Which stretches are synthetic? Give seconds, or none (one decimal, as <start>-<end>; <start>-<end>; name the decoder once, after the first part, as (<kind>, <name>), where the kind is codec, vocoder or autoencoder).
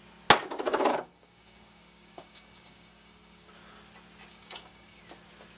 0.9-3.5 (codec, DAC); 4.3-5.0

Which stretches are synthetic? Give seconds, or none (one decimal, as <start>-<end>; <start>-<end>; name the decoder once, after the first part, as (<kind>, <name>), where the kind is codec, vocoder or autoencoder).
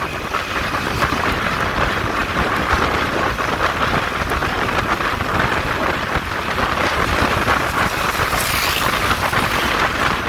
2.2-3.1 (vocoder, BigVGAN v2)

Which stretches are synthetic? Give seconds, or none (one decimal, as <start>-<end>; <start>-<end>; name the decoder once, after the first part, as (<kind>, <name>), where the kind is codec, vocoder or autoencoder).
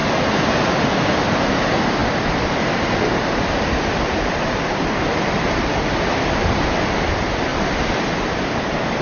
2.0-7.1 (vocoder, BigVGAN v2); 7.5-8.1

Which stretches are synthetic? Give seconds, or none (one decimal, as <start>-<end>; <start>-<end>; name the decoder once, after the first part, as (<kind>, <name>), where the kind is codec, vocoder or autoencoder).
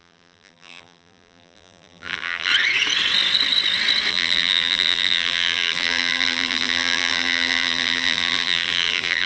0.0-2.5 (vocoder, BigVGAN v2); 4.1-9.3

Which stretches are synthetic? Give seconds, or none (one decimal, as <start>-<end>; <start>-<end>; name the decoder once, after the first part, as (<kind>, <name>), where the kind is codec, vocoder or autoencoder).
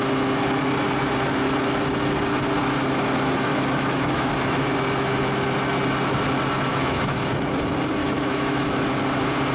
3.5-4.3 (autoencoder, DAC-VAE); 6.7-7.3; 8.0-8.6